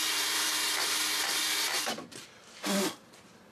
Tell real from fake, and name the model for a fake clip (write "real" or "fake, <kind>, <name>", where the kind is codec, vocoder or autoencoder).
fake, vocoder, BigVGAN v2